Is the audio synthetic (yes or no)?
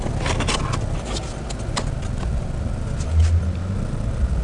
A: no